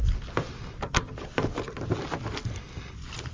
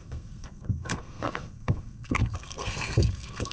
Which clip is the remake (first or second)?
second